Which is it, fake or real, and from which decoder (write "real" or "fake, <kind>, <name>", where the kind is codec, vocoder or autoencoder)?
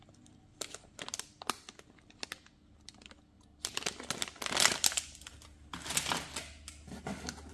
real